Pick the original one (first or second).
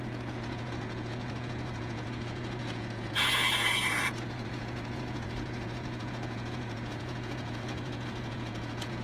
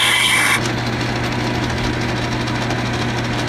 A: second